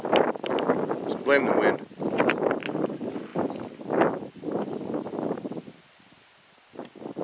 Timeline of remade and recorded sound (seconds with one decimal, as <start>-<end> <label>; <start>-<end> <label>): 0.0-7.2 recorded